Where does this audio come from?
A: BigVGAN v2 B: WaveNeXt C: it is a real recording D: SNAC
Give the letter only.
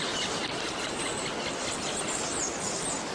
C